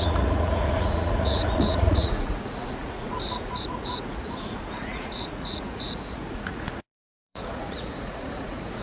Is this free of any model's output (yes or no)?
no